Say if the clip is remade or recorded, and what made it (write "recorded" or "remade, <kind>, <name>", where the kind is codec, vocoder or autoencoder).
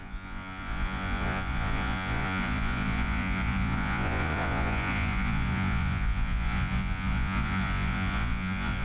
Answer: remade, vocoder, Vocos